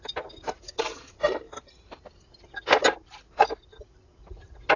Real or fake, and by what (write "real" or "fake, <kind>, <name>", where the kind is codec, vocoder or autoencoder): real